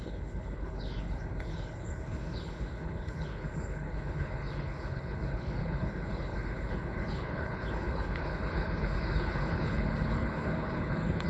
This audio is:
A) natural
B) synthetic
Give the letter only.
B